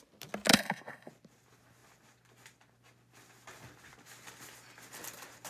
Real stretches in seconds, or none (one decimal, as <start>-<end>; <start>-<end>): 0.0-0.5; 1.1-5.5